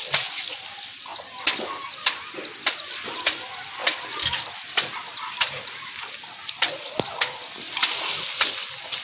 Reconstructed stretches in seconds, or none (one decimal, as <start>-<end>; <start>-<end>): 3.8-7.1